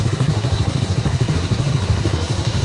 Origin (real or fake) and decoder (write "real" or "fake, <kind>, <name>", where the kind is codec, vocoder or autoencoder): fake, codec, SNAC